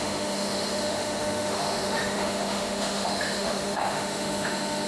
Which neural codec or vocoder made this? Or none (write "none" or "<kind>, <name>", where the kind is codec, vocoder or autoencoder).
autoencoder, DAC-VAE